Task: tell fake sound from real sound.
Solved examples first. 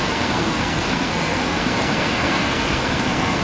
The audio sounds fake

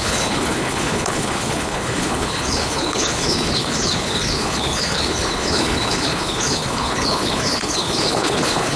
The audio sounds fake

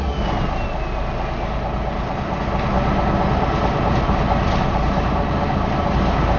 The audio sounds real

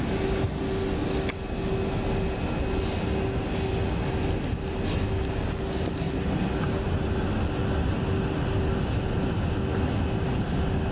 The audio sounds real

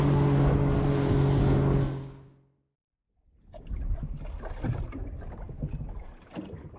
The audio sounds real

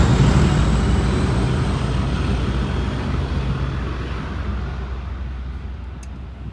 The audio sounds real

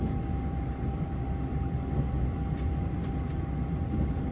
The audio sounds real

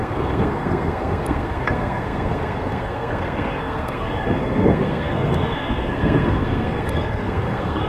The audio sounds fake